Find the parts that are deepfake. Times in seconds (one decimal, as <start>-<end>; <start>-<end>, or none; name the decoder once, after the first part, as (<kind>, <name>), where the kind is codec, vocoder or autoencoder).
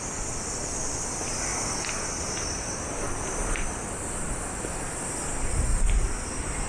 none